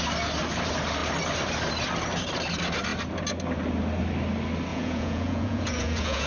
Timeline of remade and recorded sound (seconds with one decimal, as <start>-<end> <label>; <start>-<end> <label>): 0.0-4.7 recorded; 4.7-6.3 remade